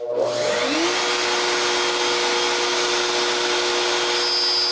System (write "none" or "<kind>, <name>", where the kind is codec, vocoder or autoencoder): none